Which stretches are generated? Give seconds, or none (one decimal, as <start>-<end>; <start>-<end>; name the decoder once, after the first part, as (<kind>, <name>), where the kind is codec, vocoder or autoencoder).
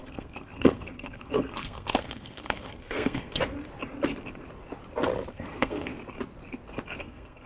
0.0-3.4 (codec, SNAC); 5.3-5.9; 7.0-7.5